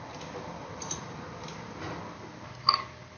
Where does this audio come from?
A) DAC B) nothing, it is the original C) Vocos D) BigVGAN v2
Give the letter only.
B